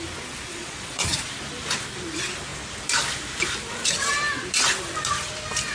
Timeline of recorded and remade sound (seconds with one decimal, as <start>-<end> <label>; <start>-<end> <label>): 0.0-0.5 recorded; 0.5-1.3 remade; 1.3-5.7 recorded